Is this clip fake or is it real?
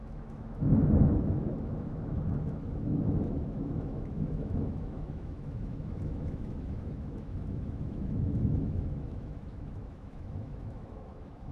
fake